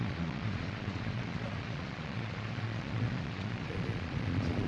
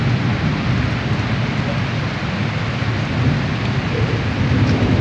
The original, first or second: second